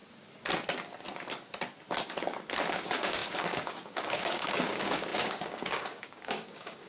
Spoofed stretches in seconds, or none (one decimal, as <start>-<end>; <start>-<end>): 2.7-6.9